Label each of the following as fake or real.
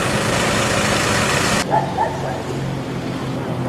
real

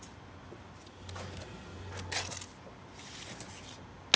real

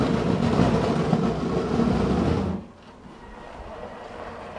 real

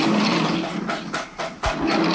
real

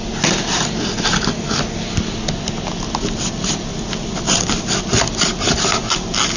real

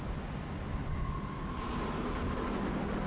real